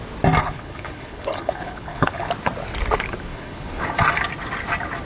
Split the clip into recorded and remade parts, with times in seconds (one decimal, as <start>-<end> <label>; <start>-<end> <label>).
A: 0.0-0.4 recorded; 0.4-2.3 remade; 2.3-3.3 recorded; 3.3-3.8 remade; 3.8-5.1 recorded